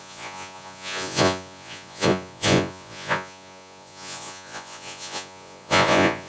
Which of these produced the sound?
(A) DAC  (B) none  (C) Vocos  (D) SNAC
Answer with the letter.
C